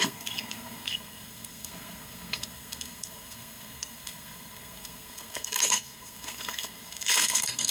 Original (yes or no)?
no